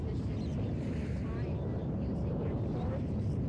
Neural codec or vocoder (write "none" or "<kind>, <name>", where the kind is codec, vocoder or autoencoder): vocoder, BigVGAN v2